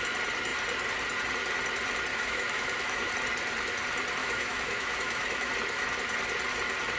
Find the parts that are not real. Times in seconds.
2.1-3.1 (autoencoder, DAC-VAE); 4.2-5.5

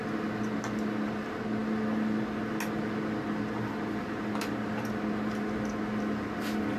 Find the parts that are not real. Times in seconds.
none

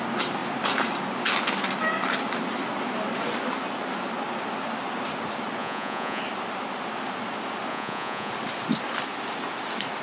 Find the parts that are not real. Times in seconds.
5.6-6.2 (vocoder, Vocos); 7.7-8.3

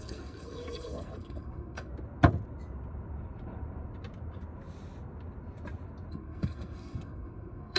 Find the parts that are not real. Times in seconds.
0.0-1.9 (codec, SNAC); 6.1-7.8